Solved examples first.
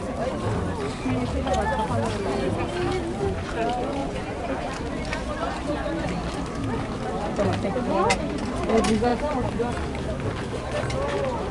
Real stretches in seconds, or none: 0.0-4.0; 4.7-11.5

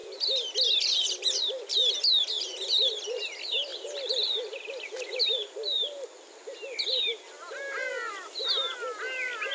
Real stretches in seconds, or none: 0.0-9.5